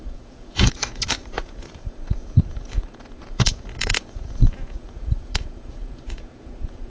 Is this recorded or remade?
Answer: remade